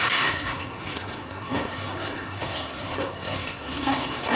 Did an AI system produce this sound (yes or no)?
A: yes